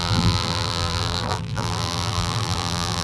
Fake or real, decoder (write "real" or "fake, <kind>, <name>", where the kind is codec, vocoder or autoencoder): fake, vocoder, BigVGAN v2